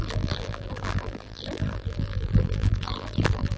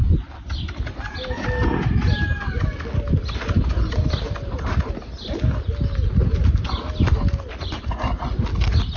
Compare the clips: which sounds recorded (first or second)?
second